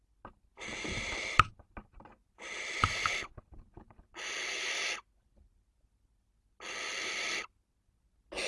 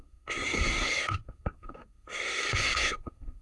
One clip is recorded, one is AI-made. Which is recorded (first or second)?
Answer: first